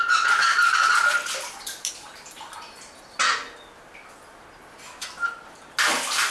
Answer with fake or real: real